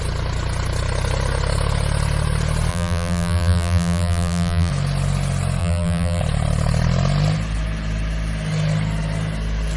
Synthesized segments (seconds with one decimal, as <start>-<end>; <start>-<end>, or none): 2.7-4.7; 5.6-6.2